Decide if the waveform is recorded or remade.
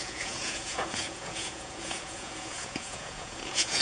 remade